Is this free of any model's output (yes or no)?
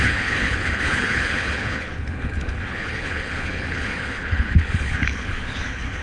no